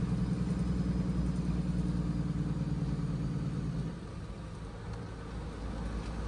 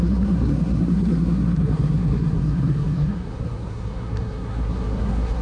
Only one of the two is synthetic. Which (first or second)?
second